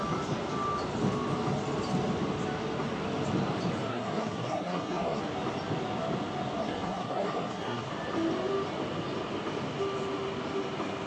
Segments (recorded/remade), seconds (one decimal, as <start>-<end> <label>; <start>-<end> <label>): 0.0-3.9 recorded; 3.9-5.2 remade; 5.2-6.6 recorded; 6.6-7.9 remade; 7.9-11.1 recorded